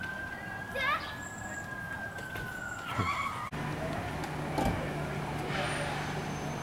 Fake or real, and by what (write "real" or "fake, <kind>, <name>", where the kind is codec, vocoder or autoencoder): real